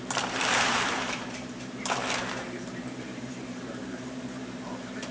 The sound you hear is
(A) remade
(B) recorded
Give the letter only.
A